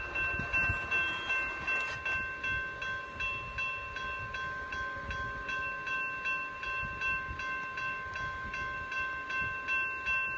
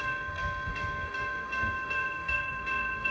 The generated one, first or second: second